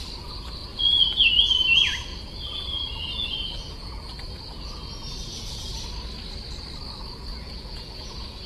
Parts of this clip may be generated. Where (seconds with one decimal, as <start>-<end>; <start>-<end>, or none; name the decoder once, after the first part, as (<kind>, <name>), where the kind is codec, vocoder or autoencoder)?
0.6-1.3 (vocoder, Vocos); 2.1-5.5; 7.3-8.5